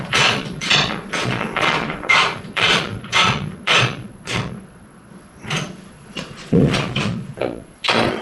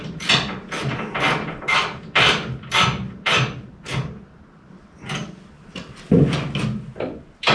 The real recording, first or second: second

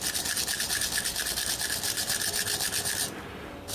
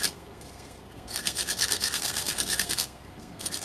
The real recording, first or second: first